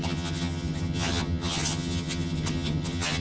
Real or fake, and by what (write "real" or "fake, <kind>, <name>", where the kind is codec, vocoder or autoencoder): fake, vocoder, HiFi-GAN